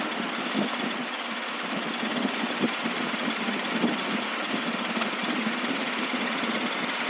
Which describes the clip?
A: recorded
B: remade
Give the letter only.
A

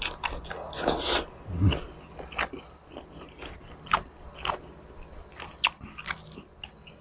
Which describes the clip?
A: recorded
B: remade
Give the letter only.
A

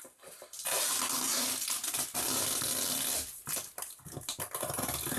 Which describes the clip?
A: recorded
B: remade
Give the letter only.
A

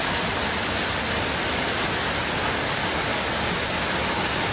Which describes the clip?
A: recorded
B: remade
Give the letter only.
A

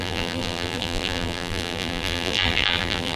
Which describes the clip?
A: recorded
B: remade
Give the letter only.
B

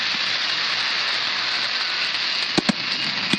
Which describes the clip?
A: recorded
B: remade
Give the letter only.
A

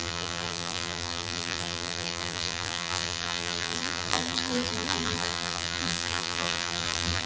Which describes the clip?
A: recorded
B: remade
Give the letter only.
B